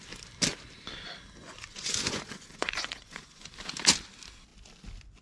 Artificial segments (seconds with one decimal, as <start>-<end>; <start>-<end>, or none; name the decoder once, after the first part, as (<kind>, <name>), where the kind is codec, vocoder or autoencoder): 1.4-3.5 (vocoder, Vocos)